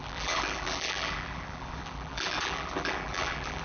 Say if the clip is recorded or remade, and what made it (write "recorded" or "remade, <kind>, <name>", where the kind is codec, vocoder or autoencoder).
remade, vocoder, BigVGAN v2